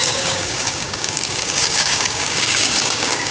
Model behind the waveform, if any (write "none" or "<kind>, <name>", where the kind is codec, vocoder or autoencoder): codec, DAC